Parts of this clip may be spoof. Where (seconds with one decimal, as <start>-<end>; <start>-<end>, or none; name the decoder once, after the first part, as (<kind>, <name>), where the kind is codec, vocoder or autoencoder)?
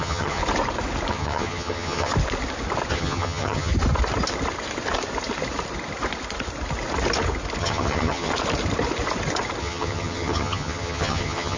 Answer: 0.0-0.4 (vocoder, HiFi-GAN); 1.1-2.1; 2.9-3.7; 7.6-8.3; 9.6-11.6